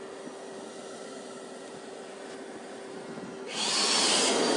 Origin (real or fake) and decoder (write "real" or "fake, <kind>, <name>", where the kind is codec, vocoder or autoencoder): real